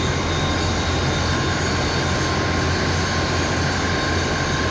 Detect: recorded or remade recorded